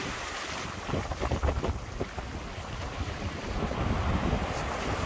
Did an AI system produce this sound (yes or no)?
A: no